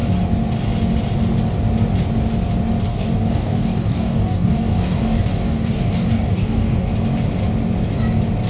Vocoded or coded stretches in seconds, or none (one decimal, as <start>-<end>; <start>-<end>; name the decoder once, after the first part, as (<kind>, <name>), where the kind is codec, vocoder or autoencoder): 2.9-6.9 (codec, DAC)